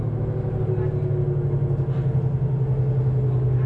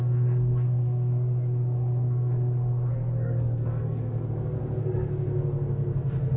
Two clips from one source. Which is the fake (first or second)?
second